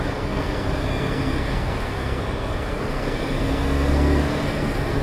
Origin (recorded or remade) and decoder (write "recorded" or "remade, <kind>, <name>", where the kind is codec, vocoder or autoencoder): remade, codec, SNAC